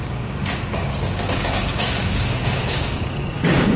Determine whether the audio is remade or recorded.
remade